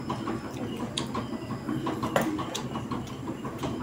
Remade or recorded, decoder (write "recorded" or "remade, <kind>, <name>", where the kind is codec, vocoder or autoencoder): recorded